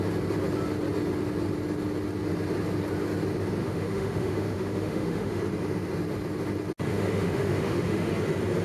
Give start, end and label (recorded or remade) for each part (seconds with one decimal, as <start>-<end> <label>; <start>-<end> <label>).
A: 0.0-3.6 recorded; 3.6-5.4 remade; 5.4-6.9 recorded; 6.9-8.1 remade; 8.1-8.6 recorded